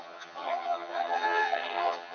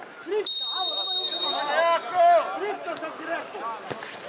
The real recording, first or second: second